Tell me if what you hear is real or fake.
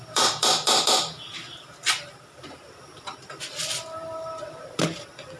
fake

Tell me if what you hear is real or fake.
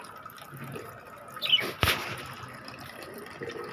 real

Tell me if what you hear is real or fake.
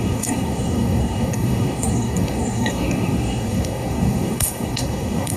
fake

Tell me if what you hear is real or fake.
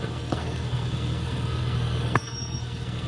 fake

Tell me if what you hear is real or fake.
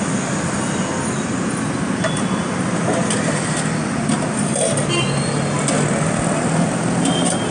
real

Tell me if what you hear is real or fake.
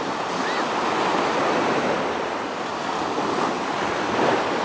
real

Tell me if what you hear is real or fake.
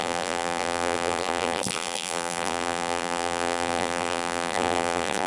fake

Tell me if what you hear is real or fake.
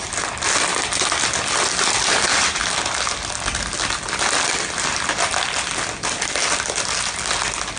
real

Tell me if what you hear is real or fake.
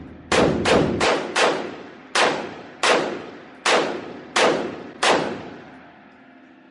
real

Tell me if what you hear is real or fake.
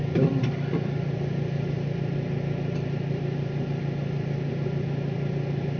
real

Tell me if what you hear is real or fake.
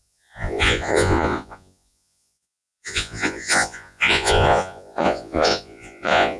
fake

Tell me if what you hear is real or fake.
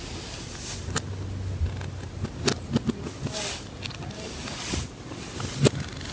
real